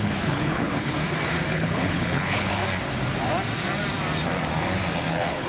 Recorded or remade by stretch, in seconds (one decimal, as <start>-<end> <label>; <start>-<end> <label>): 0.0-1.0 remade; 1.0-1.5 recorded; 1.5-2.6 remade; 2.6-5.1 recorded; 5.1-5.5 remade